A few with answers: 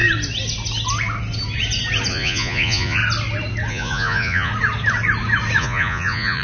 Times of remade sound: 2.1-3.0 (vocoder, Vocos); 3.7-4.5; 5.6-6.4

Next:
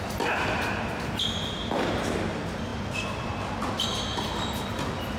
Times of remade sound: none

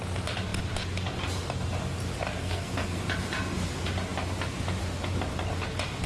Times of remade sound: 2.4-3.0 (codec, SNAC)

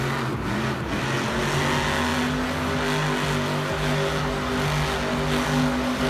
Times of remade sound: none

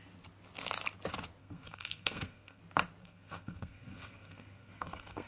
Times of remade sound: 1.4-2.6 (codec, SNAC); 3.0-5.3

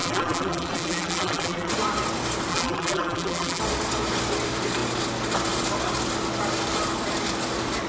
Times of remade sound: 0.0-1.7 (vocoder, BigVGAN v2); 2.5-3.6